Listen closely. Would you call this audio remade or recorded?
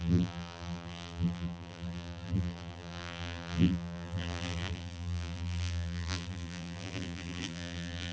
remade